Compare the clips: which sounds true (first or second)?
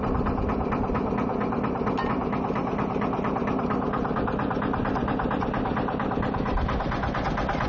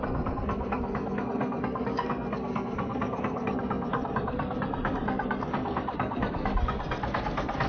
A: first